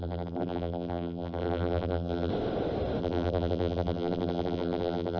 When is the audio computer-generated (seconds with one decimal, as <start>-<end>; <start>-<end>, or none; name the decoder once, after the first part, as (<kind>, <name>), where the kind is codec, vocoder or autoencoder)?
0.0-2.3 (vocoder, BigVGAN v2); 3.0-5.2